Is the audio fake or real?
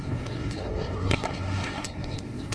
fake